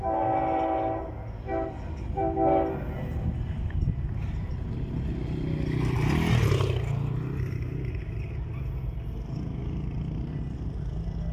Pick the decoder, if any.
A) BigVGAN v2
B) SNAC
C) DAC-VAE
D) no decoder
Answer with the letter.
D